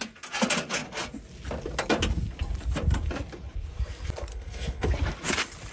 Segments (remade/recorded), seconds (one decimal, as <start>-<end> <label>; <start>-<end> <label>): 0.0-4.3 recorded; 4.3-4.9 remade; 4.9-5.7 recorded